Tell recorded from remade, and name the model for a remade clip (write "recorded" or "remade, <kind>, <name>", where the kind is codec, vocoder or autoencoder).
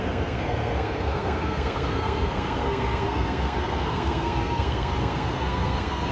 remade, codec, SNAC